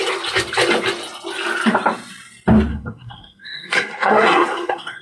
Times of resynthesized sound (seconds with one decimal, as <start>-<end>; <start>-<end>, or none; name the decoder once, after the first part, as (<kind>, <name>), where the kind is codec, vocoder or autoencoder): 2.7-5.0 (codec, SNAC)